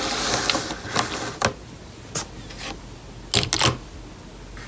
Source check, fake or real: real